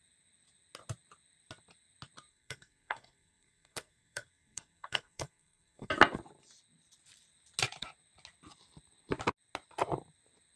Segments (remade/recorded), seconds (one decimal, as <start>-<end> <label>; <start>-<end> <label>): 0.0-2.3 recorded; 2.3-5.9 remade; 5.9-10.6 recorded